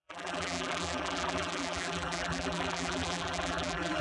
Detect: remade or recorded remade